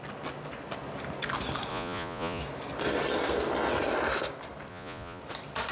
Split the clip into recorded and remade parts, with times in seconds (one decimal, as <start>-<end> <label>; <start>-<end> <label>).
0.0-1.7 recorded; 1.7-2.4 remade; 2.4-4.7 recorded; 4.7-5.2 remade; 5.2-5.7 recorded